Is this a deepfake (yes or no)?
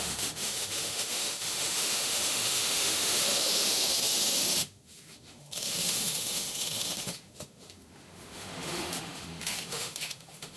yes